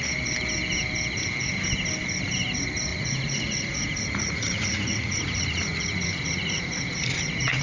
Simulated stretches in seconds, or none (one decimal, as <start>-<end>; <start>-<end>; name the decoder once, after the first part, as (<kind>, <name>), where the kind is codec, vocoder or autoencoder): 2.9-7.6 (vocoder, Vocos)